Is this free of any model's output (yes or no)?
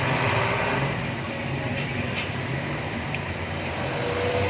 yes